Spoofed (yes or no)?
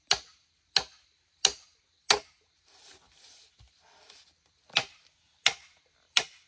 no